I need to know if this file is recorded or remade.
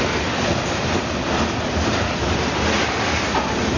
recorded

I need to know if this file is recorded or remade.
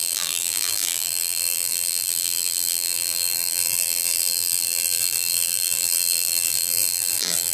remade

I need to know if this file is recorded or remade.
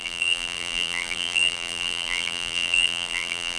remade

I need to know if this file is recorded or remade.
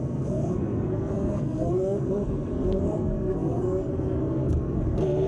remade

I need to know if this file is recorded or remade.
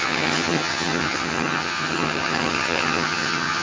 remade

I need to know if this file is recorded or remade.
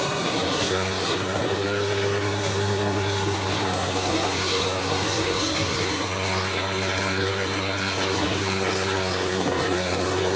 remade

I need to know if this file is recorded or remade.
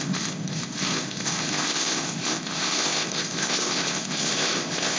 remade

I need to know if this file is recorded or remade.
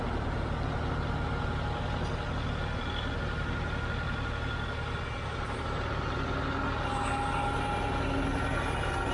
recorded